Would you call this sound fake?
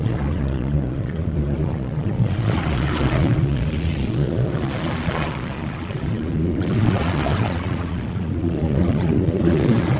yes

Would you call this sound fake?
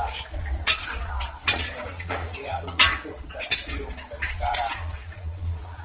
yes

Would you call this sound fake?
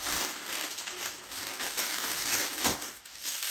yes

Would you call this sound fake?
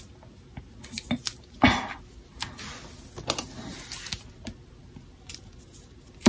no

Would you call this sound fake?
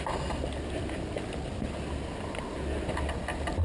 no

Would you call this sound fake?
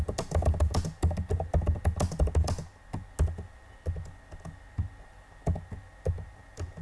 no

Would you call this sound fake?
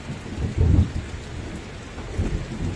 no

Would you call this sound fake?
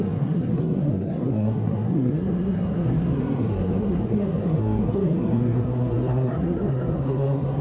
yes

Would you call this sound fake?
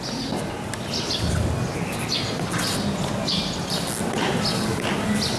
no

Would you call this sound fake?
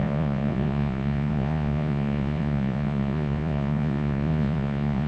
yes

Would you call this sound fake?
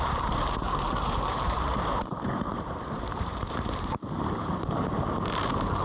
yes